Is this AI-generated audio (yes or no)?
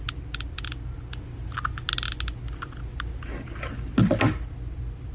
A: no